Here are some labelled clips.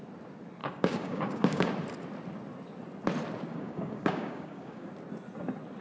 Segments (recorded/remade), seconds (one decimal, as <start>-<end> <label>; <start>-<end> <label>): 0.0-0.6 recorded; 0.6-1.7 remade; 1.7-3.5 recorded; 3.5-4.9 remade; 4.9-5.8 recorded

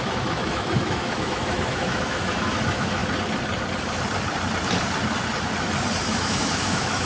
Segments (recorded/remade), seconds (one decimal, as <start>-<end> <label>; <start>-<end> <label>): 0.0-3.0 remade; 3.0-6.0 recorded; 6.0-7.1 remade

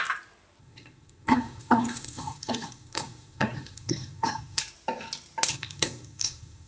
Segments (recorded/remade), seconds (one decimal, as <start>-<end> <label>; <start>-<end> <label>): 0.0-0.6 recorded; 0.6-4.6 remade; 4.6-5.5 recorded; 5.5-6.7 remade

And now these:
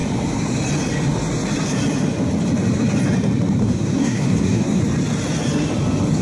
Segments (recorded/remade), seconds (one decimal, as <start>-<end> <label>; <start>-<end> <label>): 0.0-3.6 recorded; 3.6-4.8 remade; 4.8-6.2 recorded